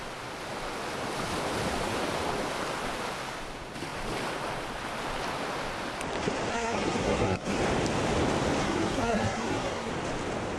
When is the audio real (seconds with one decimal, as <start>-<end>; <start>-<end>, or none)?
0.0-6.5; 7.6-8.6; 9.9-10.6